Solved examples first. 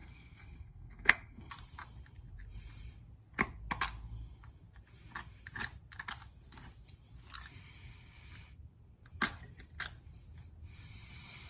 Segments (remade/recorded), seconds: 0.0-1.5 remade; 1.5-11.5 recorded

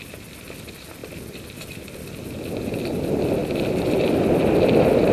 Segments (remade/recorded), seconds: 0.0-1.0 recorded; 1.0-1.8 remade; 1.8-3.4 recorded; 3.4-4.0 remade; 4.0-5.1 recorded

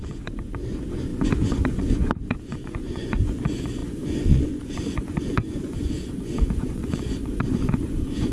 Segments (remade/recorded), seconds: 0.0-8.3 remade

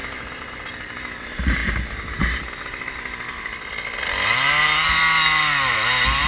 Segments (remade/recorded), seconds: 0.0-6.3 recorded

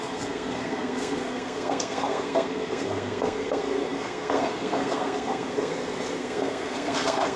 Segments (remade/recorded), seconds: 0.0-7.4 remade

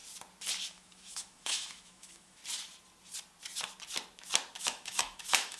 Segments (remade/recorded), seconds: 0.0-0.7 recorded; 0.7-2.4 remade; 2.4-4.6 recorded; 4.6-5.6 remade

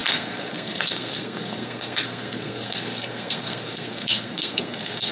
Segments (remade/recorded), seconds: 0.0-5.1 remade